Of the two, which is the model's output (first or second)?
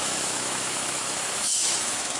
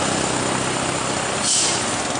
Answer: first